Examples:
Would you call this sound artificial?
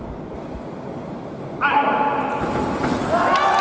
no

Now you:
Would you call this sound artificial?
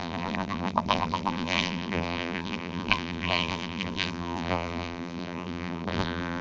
yes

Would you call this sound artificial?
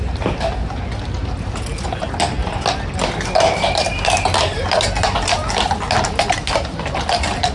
no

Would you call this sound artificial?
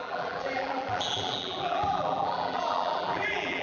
yes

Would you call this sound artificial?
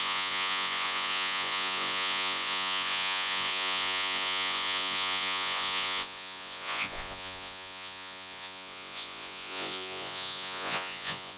yes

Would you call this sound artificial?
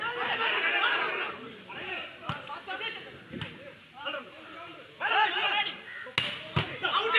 no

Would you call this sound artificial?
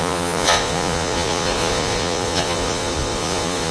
yes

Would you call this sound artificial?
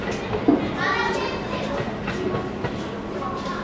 no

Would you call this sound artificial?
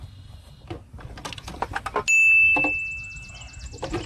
no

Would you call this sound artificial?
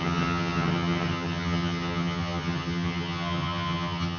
yes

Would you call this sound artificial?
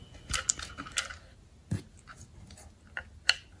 no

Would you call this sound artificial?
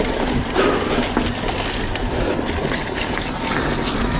no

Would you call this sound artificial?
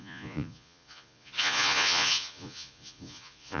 yes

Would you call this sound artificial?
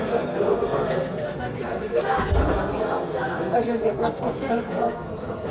yes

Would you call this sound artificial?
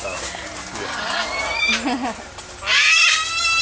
no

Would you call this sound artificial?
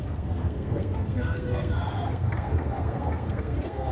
yes